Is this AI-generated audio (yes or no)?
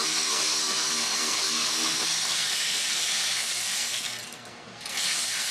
yes